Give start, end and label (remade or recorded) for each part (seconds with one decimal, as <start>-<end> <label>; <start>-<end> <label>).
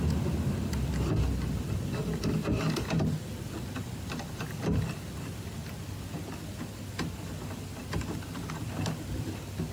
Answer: 0.0-9.7 recorded